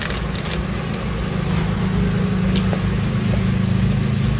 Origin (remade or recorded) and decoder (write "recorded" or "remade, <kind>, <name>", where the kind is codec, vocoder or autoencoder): recorded